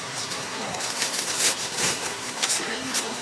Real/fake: fake